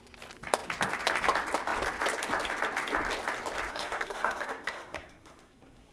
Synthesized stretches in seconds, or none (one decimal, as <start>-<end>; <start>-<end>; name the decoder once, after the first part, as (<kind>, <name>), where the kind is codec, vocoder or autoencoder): 3.7-5.9 (codec, SNAC)